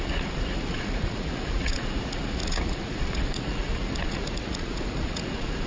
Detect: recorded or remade remade